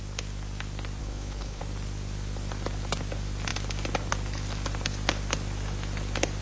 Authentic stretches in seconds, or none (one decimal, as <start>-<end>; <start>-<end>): 0.0-1.0; 1.6-6.4